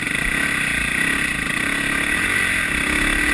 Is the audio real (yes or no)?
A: yes